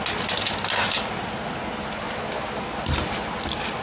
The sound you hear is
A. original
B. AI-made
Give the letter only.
A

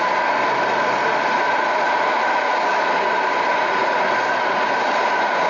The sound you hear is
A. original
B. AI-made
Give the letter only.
A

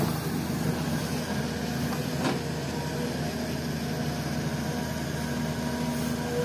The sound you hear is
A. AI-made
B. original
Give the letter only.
B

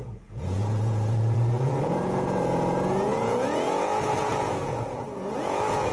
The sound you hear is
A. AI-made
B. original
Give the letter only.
A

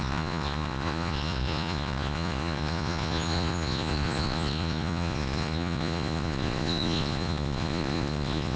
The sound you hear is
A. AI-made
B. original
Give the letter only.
A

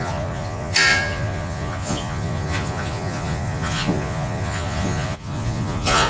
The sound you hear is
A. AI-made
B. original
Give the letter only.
A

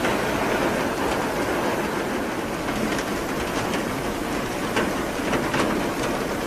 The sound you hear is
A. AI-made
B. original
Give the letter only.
B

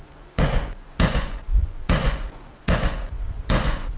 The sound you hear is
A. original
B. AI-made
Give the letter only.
B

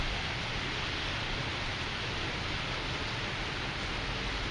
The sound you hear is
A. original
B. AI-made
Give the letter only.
A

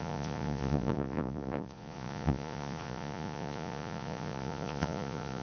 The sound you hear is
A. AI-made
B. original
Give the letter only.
A